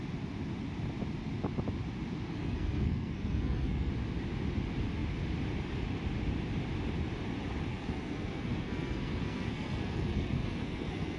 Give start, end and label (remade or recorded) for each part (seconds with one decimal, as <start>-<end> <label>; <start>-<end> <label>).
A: 0.0-2.4 recorded; 2.4-3.9 remade; 3.9-7.7 recorded; 7.7-11.2 remade